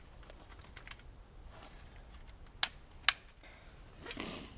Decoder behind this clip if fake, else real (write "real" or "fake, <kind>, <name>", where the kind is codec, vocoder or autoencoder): real